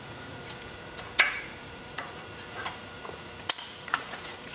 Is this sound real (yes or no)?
no